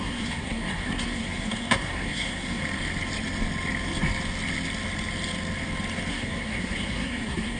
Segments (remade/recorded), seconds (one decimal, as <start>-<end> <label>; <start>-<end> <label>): 0.0-2.6 remade; 2.6-6.1 recorded; 6.1-7.6 remade

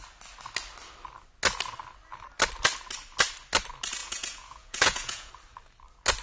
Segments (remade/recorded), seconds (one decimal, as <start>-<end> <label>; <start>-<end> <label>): 0.0-4.0 recorded; 4.0-5.3 remade; 5.3-6.2 recorded

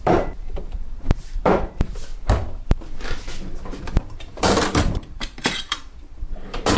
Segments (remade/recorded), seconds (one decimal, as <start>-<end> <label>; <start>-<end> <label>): 0.0-2.1 remade; 2.1-3.8 recorded; 3.8-6.8 remade

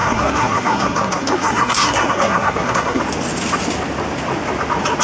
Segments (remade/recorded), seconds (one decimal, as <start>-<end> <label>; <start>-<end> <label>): 0.0-3.0 remade; 3.0-5.0 recorded

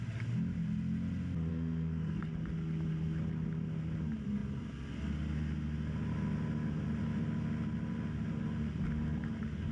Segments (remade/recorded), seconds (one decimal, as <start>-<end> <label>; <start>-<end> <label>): 0.0-1.5 recorded; 1.5-2.2 remade; 2.2-9.7 recorded